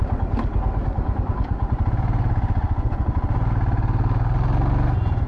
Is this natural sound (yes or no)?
yes